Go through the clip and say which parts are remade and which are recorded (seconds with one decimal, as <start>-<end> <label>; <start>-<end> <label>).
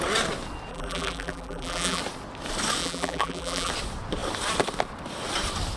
0.0-0.7 recorded; 0.7-2.0 remade; 2.0-2.8 recorded; 2.8-3.7 remade; 3.7-5.8 recorded